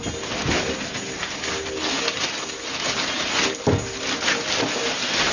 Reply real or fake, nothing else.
real